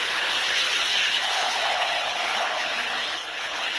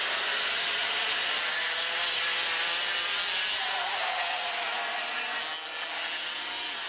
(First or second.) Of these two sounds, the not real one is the first